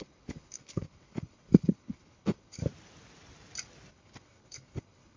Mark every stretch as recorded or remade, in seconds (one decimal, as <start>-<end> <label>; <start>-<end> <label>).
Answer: 0.0-2.6 remade; 2.6-3.9 recorded; 3.9-5.2 remade